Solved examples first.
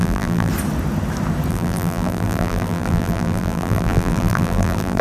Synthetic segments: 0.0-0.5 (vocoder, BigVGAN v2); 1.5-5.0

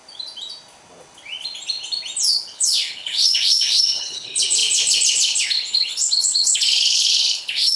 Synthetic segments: 2.3-7.8 (codec, HILCodec)

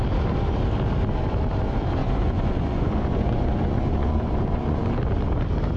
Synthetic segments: 2.0-4.8 (vocoder, Vocos)